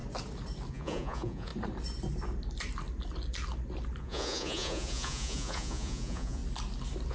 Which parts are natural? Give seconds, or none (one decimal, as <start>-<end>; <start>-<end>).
0.0-0.7; 1.5-4.0; 6.4-7.1